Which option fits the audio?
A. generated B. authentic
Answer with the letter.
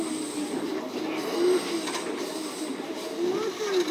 B